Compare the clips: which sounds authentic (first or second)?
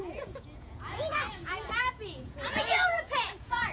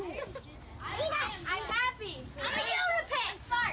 second